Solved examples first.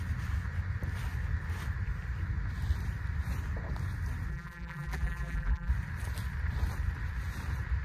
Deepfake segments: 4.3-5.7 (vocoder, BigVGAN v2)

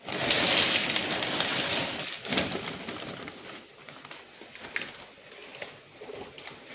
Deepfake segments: 5.4-6.7 (vocoder, BigVGAN v2)

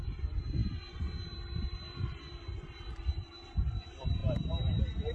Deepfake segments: 0.0-5.1 (vocoder, BigVGAN v2)

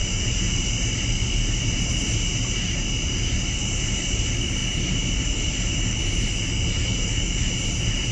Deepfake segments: 0.0-4.6 (vocoder, BigVGAN v2); 5.2-8.1

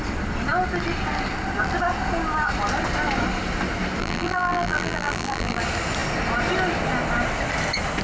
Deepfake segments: 4.0-5.6 (vocoder, BigVGAN v2)